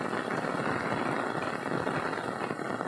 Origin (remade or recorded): recorded